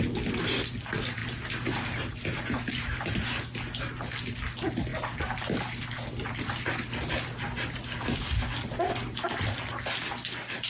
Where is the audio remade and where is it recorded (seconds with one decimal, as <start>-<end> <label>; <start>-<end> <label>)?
0.0-10.7 recorded